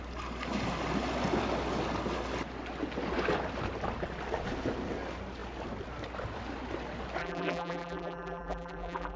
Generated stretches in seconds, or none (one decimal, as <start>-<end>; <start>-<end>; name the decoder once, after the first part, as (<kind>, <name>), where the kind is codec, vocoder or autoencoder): 7.2-9.2 (vocoder, BigVGAN v2)